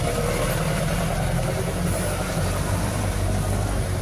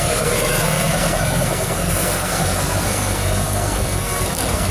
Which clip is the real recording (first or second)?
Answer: first